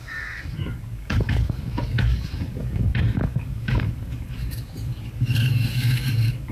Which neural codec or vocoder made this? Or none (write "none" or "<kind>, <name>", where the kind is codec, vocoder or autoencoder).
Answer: codec, DAC